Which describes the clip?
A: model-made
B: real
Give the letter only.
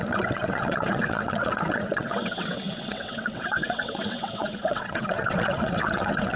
A